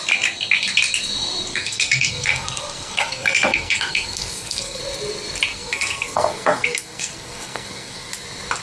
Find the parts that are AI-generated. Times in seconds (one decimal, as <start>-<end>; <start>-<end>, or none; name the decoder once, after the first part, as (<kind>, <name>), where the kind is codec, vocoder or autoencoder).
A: 1.5-4.8 (codec, SNAC); 5.5-8.1